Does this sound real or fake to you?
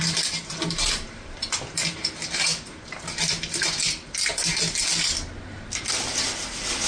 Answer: real